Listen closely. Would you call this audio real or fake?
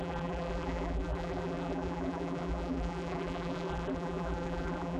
fake